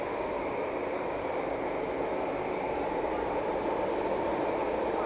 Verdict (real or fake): real